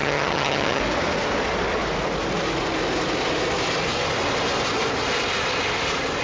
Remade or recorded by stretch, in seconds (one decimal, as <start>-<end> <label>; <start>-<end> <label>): 0.0-0.8 remade; 0.8-6.2 recorded